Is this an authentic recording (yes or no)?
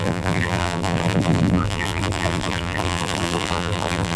no